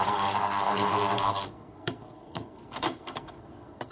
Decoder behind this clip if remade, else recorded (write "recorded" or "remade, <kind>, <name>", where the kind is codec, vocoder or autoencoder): remade, codec, SNAC